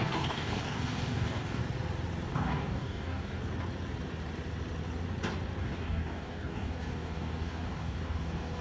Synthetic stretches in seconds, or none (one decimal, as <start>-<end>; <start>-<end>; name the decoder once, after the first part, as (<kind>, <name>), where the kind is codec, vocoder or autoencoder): 0.0-1.6 (codec, DAC); 2.3-3.4; 5.6-8.6